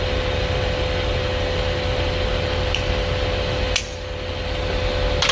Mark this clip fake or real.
real